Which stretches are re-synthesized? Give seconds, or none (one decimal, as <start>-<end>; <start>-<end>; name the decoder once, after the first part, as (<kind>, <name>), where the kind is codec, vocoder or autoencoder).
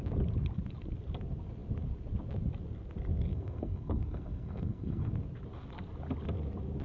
3.3-5.1 (codec, SNAC)